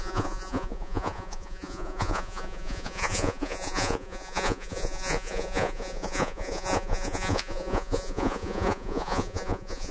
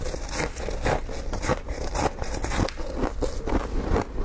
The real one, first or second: second